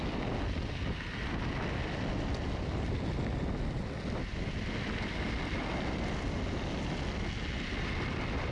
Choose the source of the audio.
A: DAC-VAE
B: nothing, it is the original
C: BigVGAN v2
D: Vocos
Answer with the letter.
B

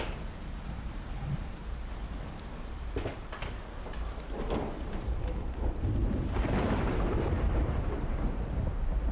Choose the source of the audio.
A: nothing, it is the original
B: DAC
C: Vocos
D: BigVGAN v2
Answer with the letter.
D